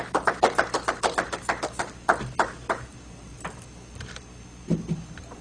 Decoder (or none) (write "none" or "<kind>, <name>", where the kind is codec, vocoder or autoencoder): vocoder, BigVGAN v2